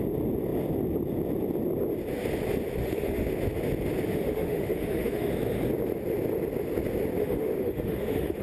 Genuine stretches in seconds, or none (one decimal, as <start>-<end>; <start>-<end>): 0.0-2.8; 3.3-4.1; 5.3-7.2